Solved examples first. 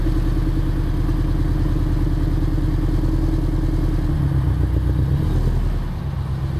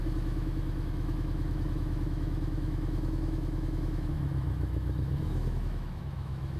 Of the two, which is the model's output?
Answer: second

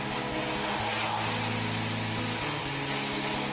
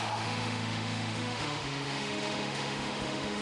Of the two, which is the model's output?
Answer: second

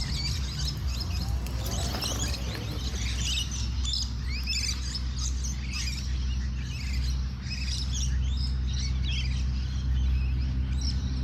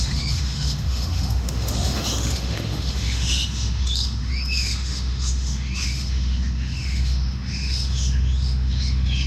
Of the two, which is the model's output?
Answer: second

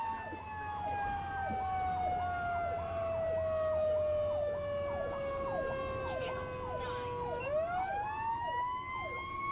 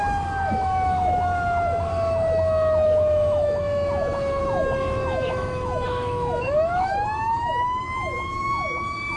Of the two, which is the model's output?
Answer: second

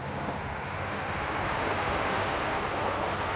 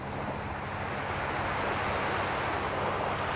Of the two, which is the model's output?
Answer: first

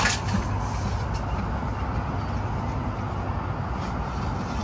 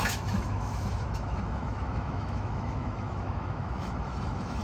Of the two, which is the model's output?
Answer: second